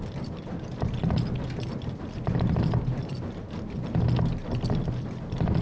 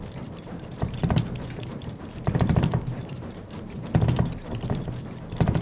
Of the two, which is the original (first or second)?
first